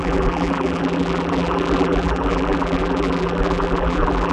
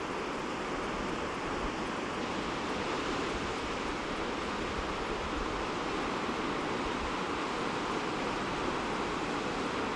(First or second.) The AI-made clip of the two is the first